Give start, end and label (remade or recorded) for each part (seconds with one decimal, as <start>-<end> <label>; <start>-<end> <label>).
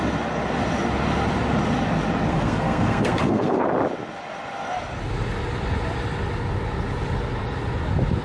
0.0-2.3 recorded; 2.3-3.6 remade; 3.6-8.2 recorded